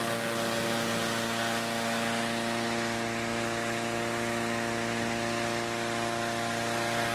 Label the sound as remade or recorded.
recorded